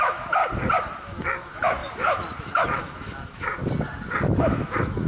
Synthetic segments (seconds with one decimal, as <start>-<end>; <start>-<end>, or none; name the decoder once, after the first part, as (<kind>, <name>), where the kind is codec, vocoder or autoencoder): 0.0-0.4 (autoencoder, DAC-VAE); 1.0-3.6; 4.4-5.1

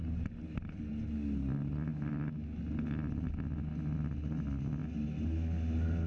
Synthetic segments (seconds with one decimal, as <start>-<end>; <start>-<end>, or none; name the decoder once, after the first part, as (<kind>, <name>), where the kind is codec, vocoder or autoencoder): 1.9-2.6 (autoencoder, DAC-VAE)

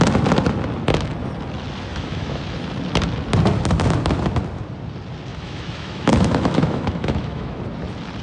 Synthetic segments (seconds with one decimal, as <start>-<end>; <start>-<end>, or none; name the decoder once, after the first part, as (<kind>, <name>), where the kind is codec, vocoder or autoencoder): 1.9-2.4 (autoencoder, DAC-VAE); 5.3-7.6